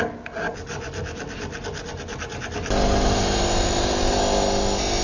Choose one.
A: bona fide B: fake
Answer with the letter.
A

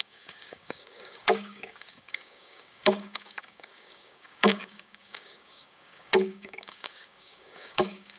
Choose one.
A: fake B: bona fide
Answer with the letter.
A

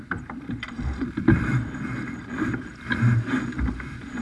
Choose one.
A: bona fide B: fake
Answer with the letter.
B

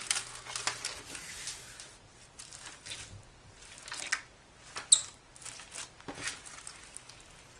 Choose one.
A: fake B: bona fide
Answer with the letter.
B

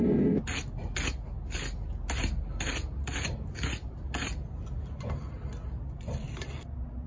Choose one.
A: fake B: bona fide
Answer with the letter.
B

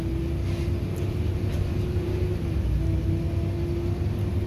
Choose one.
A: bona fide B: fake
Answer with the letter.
A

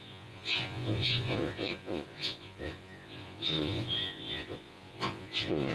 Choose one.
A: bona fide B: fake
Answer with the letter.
B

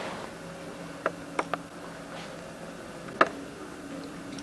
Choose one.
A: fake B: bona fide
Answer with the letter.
B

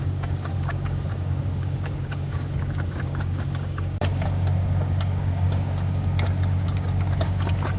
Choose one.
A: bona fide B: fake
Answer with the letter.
B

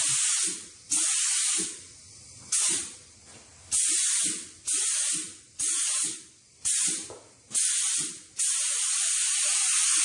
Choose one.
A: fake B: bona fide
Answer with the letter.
B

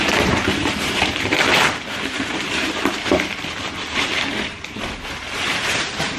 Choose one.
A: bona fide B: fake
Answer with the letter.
B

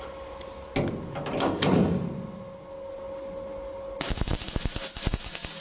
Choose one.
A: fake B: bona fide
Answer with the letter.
B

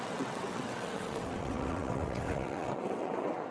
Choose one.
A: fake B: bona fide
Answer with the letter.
A